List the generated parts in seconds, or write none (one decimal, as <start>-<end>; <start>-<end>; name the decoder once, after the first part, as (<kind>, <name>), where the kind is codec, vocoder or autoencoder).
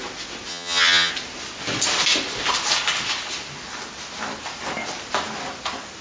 0.5-1.1 (vocoder, HiFi-GAN)